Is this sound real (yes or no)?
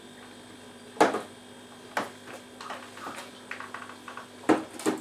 yes